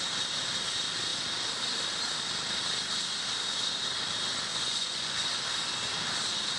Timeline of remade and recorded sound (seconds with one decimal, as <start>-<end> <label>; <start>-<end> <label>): 0.0-4.5 recorded; 4.5-5.3 remade; 5.3-6.6 recorded